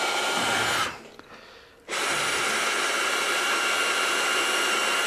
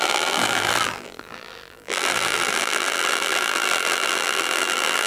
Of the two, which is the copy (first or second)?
second